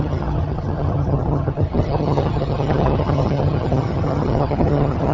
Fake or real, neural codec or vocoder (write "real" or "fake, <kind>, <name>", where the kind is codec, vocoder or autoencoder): fake, vocoder, HiFi-GAN